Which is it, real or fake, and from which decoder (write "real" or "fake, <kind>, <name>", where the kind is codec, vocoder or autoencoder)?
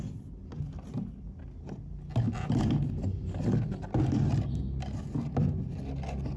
real